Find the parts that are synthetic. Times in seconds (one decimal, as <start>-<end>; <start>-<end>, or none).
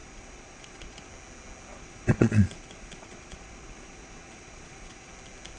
0.0-1.1; 1.7-5.1